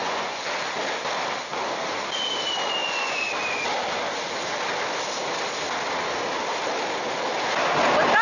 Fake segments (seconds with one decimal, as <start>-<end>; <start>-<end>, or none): 0.0-0.5; 2.8-3.3